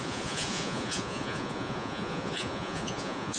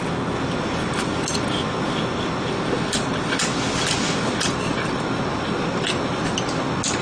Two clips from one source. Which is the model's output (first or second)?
first